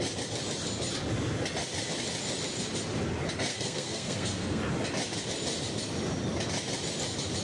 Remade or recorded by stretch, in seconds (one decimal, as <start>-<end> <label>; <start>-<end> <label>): 0.0-3.5 recorded; 3.5-4.6 remade; 4.6-7.4 recorded